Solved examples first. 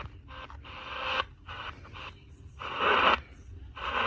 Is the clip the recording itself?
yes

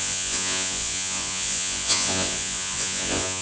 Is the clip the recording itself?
no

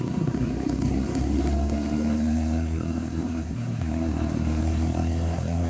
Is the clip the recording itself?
no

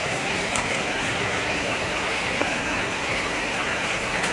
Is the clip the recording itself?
no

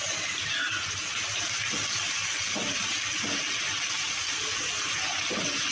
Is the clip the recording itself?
yes